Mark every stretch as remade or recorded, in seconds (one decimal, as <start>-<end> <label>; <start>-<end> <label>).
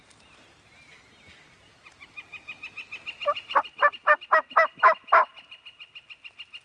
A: 0.0-2.3 remade; 2.3-6.6 recorded